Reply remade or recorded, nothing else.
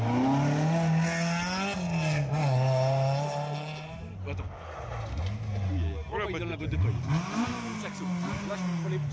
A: recorded